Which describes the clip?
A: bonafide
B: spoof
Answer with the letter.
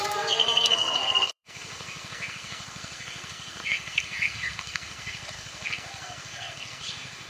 B